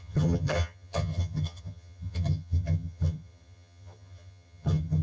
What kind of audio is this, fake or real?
fake